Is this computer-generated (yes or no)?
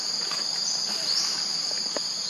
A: no